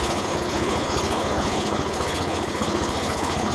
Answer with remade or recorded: remade